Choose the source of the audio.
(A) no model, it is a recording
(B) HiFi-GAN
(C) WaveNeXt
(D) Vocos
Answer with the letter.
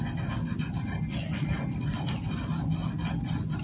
A